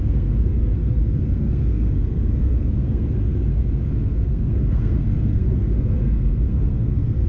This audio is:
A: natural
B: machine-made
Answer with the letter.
B